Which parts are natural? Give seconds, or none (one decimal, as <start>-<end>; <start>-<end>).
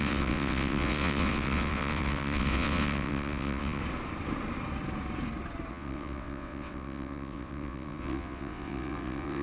3.8-5.7